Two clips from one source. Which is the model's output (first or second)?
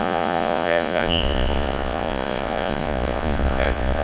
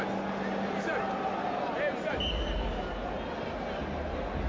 first